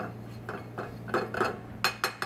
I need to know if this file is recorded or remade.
recorded